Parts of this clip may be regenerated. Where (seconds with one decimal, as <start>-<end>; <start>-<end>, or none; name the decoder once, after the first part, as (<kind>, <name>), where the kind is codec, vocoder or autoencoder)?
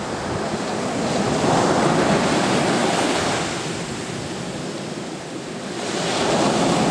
none